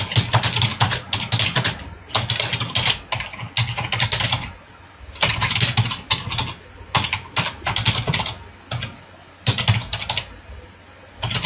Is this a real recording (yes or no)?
yes